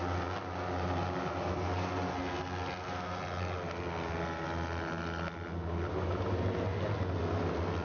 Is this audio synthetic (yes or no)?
no